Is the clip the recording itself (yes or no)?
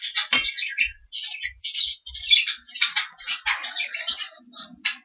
yes